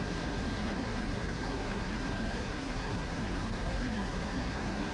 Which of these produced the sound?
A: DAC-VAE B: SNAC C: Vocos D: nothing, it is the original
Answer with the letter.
B